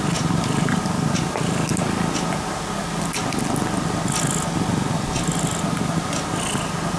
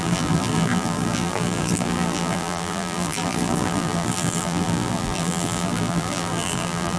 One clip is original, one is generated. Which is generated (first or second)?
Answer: second